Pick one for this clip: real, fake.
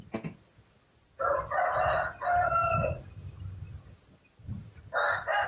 fake